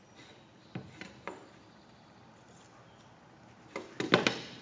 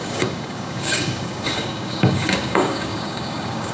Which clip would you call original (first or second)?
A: first